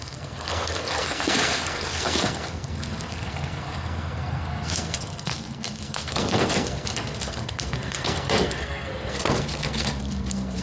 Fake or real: fake